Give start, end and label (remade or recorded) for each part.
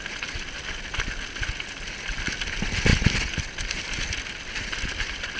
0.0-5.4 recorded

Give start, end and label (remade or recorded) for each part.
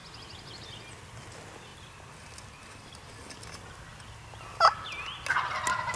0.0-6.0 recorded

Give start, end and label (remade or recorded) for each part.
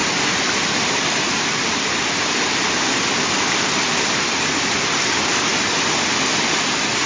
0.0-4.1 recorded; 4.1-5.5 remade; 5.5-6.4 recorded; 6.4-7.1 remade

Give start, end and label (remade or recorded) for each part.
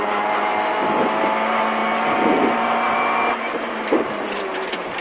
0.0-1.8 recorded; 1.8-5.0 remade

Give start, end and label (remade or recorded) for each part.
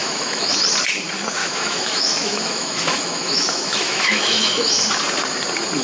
0.0-0.6 remade; 0.6-1.4 recorded; 1.4-4.8 remade; 4.8-5.8 recorded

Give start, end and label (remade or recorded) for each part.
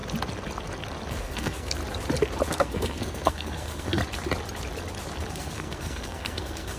0.0-1.1 recorded; 1.1-1.8 remade; 1.8-2.5 recorded; 2.5-4.0 remade; 4.0-5.3 recorded; 5.3-6.8 remade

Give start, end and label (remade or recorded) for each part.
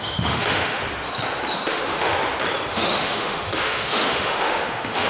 0.0-0.8 remade; 0.8-1.5 recorded; 1.5-2.1 remade; 2.1-2.7 recorded; 2.7-5.1 remade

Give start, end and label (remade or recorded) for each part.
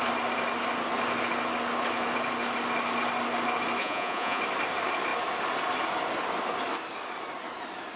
0.0-3.8 recorded; 3.8-4.4 remade; 4.4-8.0 recorded